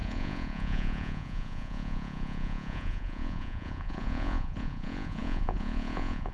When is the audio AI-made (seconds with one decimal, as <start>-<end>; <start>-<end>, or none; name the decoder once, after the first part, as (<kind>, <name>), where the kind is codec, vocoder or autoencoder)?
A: 0.0-6.3 (vocoder, Vocos)